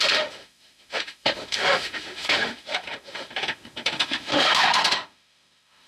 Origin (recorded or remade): remade